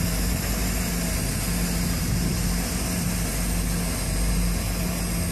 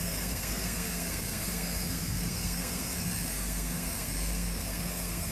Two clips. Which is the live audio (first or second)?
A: first